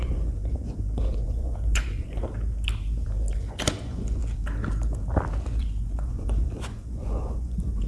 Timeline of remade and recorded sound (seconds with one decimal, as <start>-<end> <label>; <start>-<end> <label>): 0.0-2.2 remade; 2.2-3.3 recorded; 3.3-4.2 remade; 4.2-5.6 recorded; 5.6-7.9 remade